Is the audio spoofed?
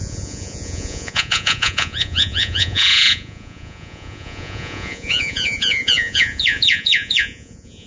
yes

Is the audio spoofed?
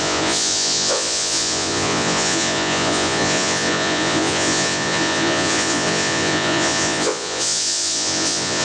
yes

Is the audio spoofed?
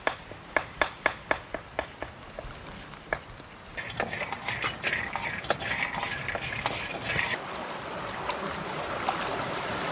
no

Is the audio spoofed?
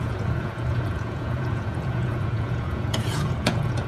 yes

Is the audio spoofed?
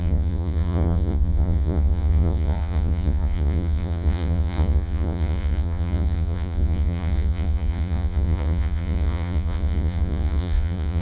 yes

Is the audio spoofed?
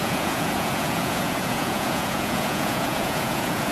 yes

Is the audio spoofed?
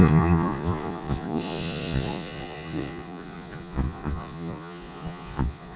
yes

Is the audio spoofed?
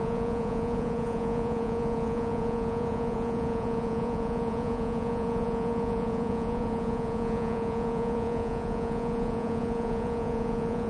yes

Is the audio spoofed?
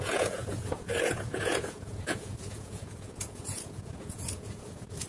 yes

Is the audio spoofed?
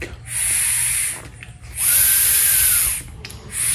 no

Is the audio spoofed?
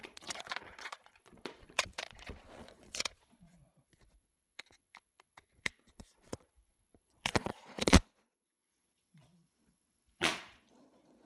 yes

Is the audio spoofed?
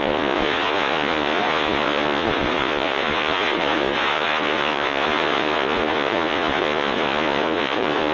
yes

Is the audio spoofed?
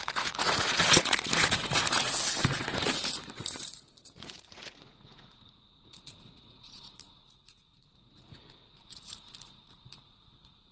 yes